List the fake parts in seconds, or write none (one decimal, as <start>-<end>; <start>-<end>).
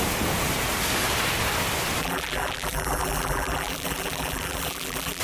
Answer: 2.0-5.2